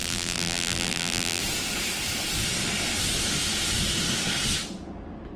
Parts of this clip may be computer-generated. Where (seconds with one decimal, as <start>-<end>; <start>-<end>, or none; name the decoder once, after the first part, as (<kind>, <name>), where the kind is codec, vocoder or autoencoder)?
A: 0.0-1.4 (vocoder, BigVGAN v2)